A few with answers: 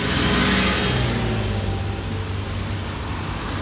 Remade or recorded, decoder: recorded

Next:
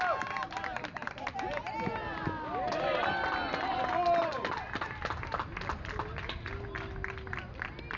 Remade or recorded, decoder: recorded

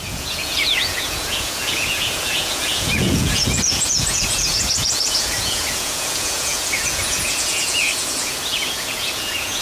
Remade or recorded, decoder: remade, vocoder, Vocos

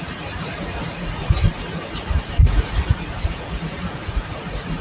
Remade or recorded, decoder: remade, vocoder, Vocos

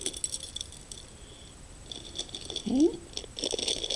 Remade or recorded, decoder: recorded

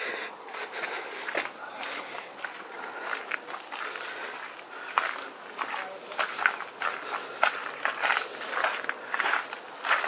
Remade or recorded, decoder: recorded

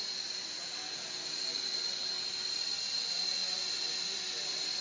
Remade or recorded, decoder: recorded